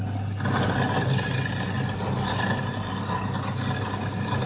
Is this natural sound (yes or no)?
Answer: yes